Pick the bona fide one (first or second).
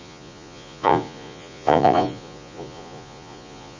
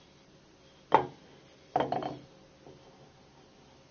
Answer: second